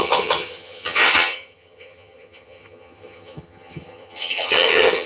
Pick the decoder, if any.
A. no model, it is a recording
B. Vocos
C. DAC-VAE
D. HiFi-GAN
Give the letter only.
D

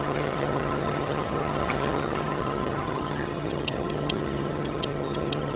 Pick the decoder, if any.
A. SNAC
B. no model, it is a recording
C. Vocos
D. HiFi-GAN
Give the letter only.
D